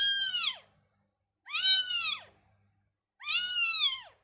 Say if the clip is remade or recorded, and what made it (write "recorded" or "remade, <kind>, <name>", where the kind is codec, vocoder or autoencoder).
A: recorded